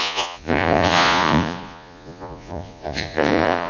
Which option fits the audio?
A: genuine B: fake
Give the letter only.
B